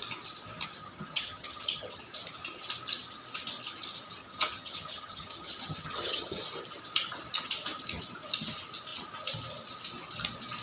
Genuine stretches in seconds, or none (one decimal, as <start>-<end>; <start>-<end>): 0.0-0.8; 2.0-4.2; 6.4-10.6